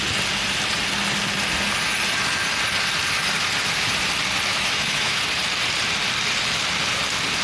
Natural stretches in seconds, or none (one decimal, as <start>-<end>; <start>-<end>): 0.0-4.5; 5.2-7.4